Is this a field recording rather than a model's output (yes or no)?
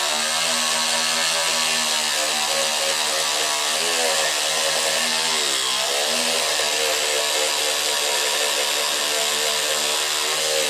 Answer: yes